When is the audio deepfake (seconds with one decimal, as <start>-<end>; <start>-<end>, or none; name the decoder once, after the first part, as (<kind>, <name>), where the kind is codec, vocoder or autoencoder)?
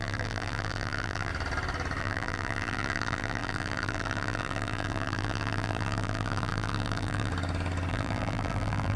0.0-1.3 (vocoder, BigVGAN v2); 2.0-7.3; 7.9-9.0